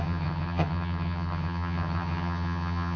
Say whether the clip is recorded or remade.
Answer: remade